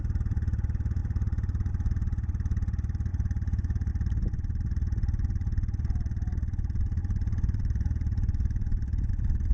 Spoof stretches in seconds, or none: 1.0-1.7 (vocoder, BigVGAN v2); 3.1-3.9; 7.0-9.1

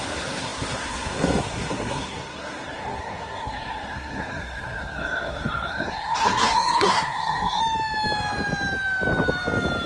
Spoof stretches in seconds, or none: 0.0-7.6 (codec, SNAC)

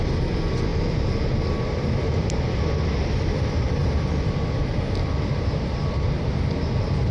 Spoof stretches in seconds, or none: 0.0-0.7 (vocoder, BigVGAN v2); 3.2-7.1

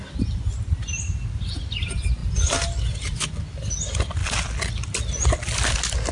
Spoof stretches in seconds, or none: none

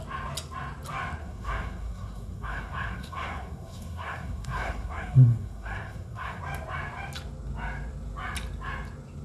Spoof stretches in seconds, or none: 1.2-6.4 (codec, SNAC)

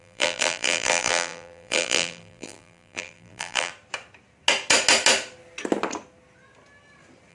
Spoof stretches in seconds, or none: 0.0-3.7 (vocoder, BigVGAN v2)

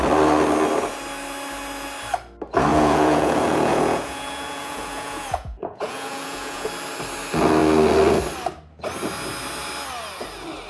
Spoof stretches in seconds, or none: 2.7-6.7 (vocoder, Vocos)